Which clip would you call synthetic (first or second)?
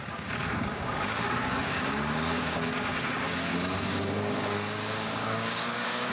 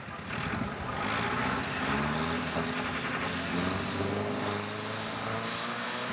first